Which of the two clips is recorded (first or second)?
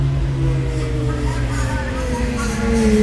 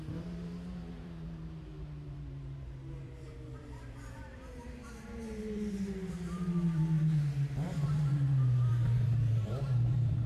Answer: first